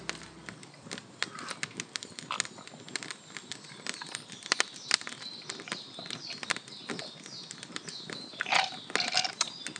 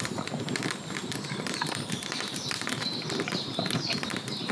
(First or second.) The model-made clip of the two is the second